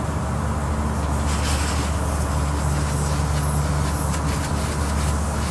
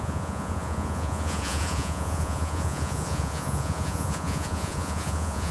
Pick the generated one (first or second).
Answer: second